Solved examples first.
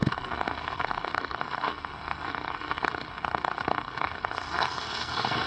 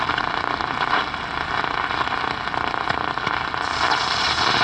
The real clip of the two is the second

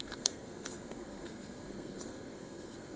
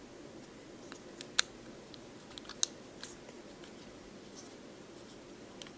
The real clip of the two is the second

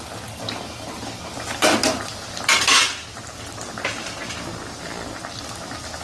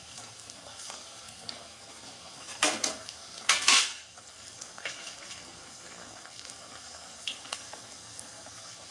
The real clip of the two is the first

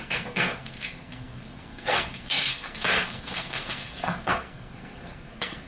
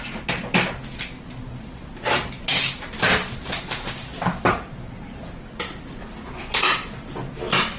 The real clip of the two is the second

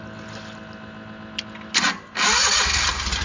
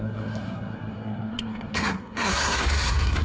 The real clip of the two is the first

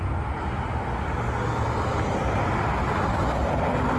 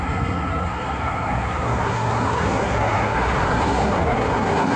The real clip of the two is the first